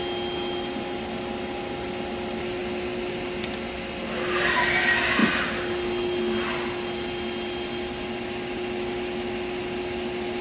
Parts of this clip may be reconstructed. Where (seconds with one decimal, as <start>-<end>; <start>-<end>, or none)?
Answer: none